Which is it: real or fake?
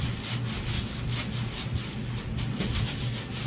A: real